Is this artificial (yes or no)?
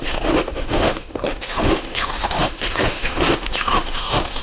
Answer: yes